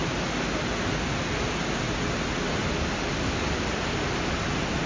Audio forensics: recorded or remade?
recorded